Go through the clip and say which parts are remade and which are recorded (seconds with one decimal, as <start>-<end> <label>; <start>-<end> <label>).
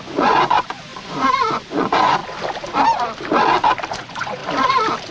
0.0-2.2 remade; 2.2-3.9 recorded; 3.9-4.4 remade; 4.4-5.1 recorded